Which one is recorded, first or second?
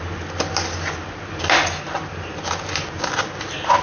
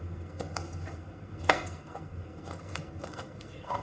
first